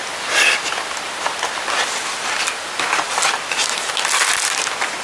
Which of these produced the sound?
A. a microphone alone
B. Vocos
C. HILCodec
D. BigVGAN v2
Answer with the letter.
A